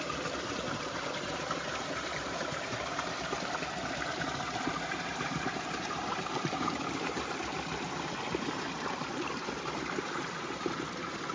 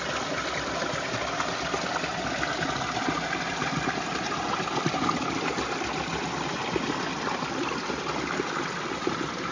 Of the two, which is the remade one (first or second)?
first